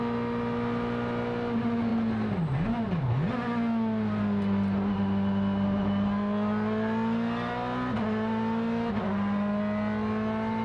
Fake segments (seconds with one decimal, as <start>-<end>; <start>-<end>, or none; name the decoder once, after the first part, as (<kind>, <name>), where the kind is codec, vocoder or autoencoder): none